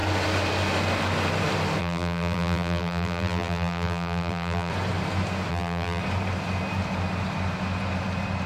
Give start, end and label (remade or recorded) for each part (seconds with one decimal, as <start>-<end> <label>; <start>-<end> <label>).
0.0-1.8 recorded; 1.8-4.7 remade; 4.7-5.5 recorded; 5.5-6.0 remade; 6.0-8.5 recorded